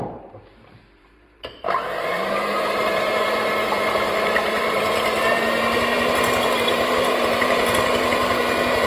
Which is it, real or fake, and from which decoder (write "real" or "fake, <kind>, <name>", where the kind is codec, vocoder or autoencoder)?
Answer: fake, vocoder, BigVGAN v2